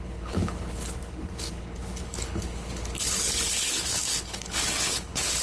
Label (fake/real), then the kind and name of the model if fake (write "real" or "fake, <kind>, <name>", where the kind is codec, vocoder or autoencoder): fake, codec, HILCodec